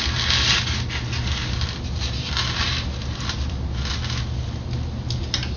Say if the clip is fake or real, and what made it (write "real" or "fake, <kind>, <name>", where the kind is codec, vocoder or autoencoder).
real